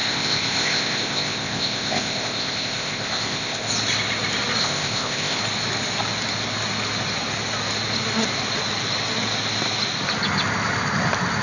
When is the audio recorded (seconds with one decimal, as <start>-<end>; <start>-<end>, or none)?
3.7-4.6; 5.4-11.4